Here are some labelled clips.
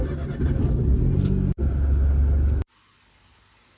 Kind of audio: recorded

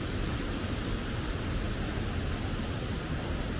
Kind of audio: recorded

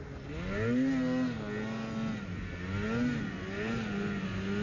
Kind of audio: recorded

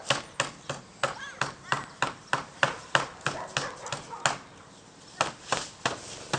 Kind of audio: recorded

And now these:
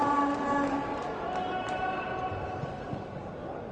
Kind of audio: recorded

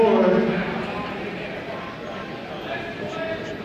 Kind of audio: recorded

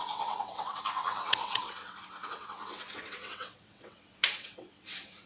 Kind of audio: remade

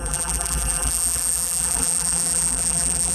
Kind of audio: remade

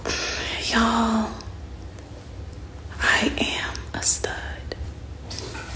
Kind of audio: recorded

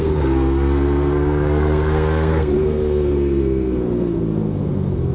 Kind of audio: remade